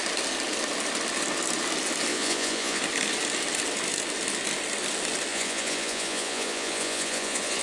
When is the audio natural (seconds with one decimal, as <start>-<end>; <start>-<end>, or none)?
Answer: 0.0-2.1; 2.8-5.3